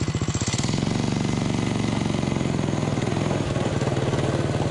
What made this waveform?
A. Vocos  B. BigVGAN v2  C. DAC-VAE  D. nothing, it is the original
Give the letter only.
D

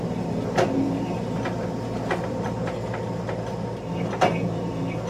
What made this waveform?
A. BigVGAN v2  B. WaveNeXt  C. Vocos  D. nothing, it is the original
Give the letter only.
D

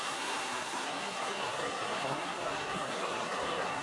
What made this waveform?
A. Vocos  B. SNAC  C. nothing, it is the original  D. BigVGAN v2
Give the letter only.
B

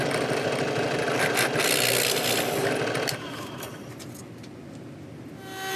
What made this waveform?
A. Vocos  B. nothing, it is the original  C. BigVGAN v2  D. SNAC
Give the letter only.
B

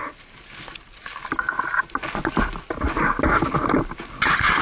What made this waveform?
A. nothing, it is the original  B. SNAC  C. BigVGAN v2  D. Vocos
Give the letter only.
A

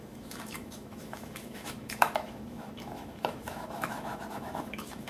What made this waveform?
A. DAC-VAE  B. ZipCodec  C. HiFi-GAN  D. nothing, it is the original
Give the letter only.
A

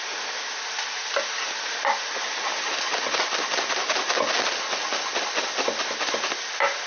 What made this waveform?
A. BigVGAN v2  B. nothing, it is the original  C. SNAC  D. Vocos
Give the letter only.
B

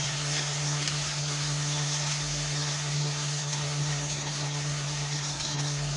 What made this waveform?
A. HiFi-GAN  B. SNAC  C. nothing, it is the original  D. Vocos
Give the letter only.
B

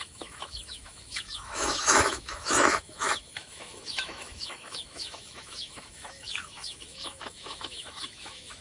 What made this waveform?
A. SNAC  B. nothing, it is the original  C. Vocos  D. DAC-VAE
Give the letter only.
D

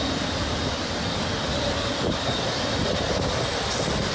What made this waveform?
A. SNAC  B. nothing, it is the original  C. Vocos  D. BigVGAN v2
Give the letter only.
B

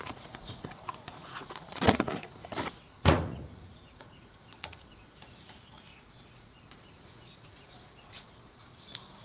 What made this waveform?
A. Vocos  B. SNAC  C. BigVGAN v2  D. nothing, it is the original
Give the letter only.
A